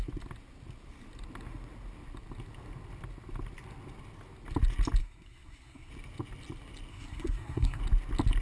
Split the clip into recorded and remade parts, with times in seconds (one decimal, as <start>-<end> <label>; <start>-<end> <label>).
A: 0.0-5.0 recorded; 5.0-5.9 remade; 5.9-6.9 recorded; 6.9-7.8 remade; 7.8-8.4 recorded